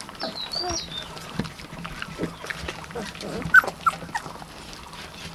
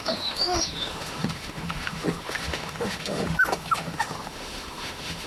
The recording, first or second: first